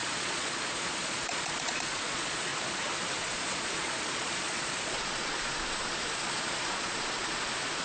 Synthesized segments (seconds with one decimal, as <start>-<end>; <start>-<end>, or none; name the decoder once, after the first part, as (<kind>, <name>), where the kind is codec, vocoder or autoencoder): 0.0-2.5 (vocoder, Vocos); 3.2-7.8